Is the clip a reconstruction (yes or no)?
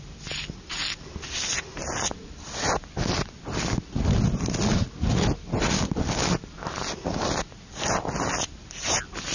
no